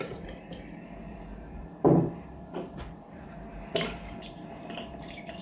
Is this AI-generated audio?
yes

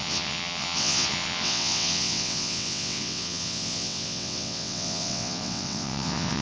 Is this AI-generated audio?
yes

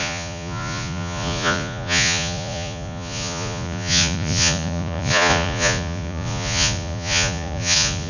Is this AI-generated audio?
yes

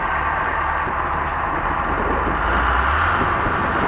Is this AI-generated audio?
no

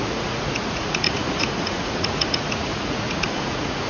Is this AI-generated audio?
yes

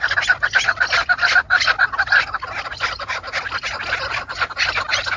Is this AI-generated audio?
no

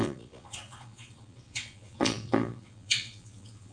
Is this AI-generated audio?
yes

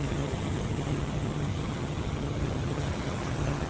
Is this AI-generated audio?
yes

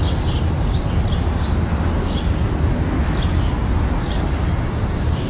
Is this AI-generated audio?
no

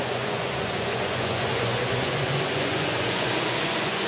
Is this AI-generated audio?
yes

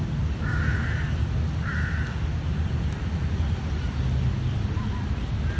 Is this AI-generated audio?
no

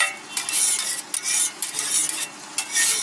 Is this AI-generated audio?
no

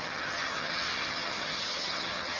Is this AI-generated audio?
yes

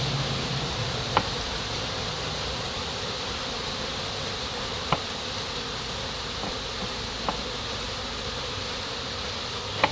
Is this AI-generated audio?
yes